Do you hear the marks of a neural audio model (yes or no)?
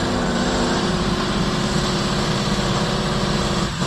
yes